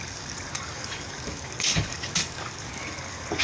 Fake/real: fake